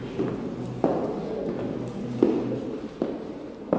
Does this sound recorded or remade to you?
recorded